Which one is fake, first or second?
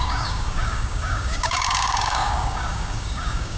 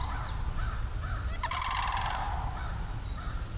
first